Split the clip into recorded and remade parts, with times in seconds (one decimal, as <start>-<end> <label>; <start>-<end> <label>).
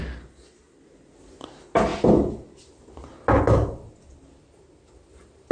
0.0-5.5 recorded